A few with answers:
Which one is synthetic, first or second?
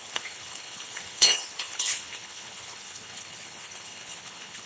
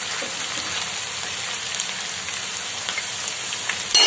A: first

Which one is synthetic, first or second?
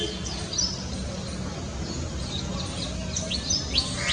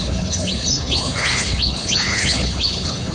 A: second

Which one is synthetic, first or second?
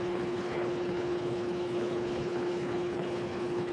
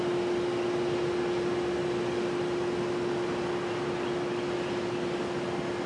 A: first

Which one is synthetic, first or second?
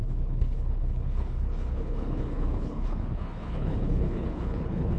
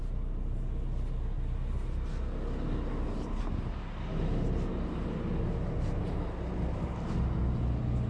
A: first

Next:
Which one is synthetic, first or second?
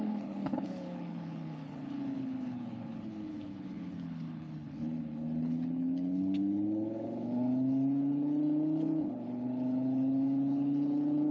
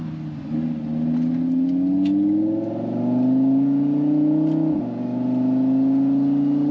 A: first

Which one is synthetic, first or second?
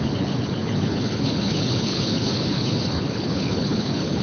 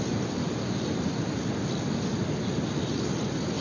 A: first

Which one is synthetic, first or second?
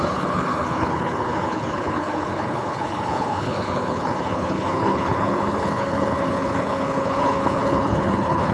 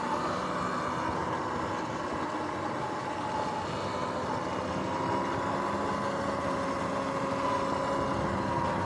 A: first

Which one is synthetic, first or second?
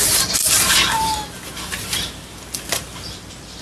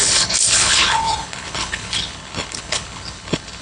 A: second